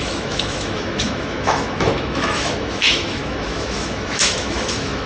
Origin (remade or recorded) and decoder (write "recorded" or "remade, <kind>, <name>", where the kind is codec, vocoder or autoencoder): remade, autoencoder, DAC-VAE